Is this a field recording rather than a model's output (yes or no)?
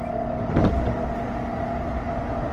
yes